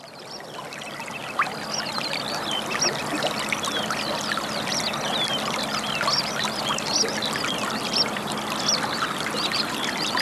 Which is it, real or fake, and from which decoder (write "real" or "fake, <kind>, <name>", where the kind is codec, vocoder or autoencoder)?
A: real